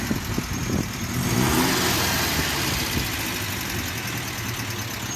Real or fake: real